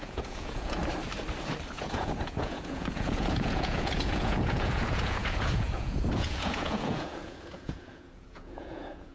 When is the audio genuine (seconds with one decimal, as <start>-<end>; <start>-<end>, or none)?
0.8-1.7

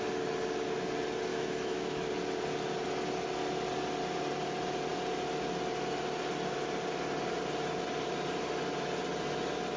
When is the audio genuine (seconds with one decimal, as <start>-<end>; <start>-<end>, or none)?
0.0-1.3; 2.1-9.8

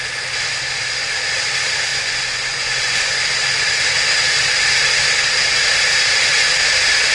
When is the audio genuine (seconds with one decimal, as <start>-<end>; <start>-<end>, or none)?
0.0-1.9; 3.2-7.1

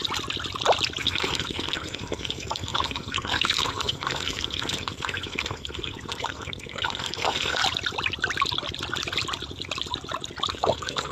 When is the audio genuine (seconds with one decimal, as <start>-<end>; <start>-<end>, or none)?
0.0-1.0; 7.6-10.5

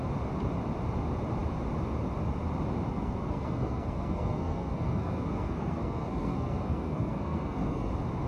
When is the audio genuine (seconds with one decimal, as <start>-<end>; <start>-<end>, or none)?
0.0-2.9; 7.9-8.3

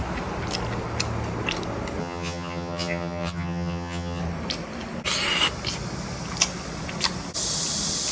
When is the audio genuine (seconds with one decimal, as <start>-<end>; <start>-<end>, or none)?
0.0-2.0; 4.2-8.1

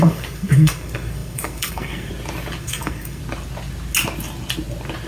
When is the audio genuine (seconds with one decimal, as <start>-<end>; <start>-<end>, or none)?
2.1-2.6; 3.2-5.1

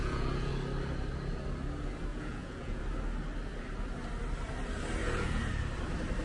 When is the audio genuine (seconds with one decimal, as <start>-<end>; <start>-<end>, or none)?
0.5-2.1; 2.8-5.0; 5.5-6.2